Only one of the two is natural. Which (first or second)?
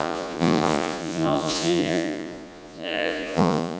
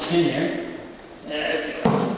second